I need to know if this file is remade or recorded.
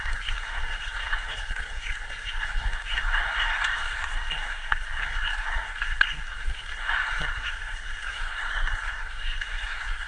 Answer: remade